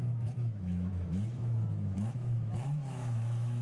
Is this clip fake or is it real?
fake